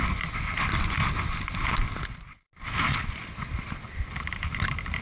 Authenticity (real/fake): real